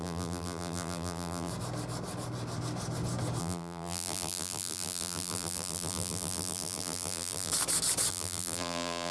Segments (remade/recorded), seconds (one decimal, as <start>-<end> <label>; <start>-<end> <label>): 0.0-1.5 remade; 1.5-3.4 recorded; 3.4-7.5 remade; 7.5-8.1 recorded; 8.1-9.1 remade

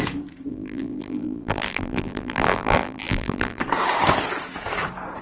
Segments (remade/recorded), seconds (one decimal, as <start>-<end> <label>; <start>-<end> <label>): 0.0-0.5 recorded; 0.5-3.6 remade; 3.6-5.2 recorded

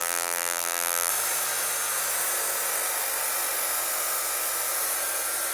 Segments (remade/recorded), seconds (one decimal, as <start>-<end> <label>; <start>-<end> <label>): 0.0-1.1 remade; 1.1-5.5 recorded

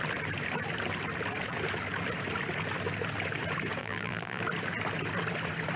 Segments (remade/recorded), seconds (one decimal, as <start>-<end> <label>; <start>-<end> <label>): 0.0-3.8 recorded; 3.8-4.4 remade; 4.4-5.8 recorded

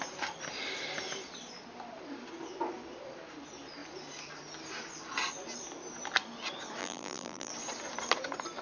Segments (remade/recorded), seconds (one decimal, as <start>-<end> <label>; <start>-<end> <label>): 0.0-6.8 recorded; 6.8-7.5 remade; 7.5-8.6 recorded

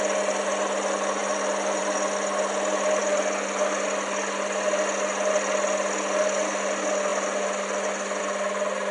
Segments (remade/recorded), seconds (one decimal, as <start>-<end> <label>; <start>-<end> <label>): 0.0-7.1 recorded; 7.1-8.2 remade; 8.2-8.9 recorded

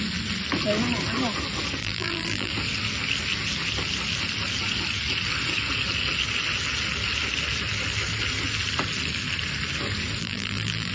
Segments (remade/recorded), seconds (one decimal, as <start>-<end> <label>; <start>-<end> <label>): 0.0-1.8 recorded; 1.8-2.5 remade; 2.5-10.2 recorded; 10.2-10.9 remade